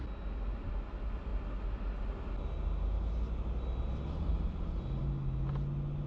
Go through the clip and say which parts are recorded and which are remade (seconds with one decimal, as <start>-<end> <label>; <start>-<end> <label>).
0.0-6.1 recorded